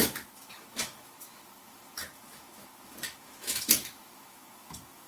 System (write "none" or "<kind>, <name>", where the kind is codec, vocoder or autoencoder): autoencoder, DAC-VAE